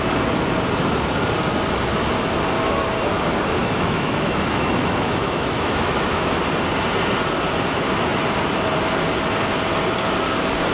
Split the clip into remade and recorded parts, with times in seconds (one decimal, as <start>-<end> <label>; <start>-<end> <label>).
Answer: 0.0-3.6 recorded; 3.6-6.4 remade; 6.4-10.7 recorded